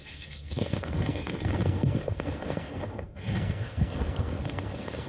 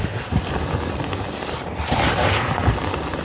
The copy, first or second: first